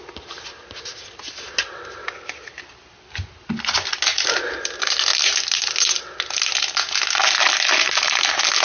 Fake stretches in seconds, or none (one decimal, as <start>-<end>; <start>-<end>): none